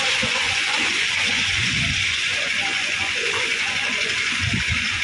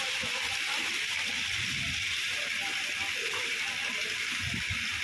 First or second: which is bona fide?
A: second